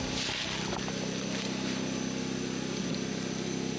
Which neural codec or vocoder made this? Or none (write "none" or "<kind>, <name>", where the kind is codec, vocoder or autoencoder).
none